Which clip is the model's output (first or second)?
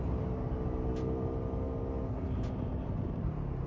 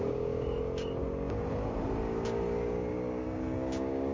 second